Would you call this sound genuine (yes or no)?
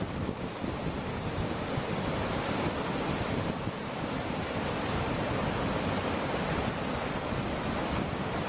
yes